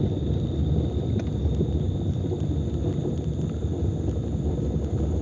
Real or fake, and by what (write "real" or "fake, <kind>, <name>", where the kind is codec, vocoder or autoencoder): real